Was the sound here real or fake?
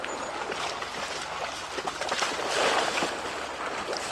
real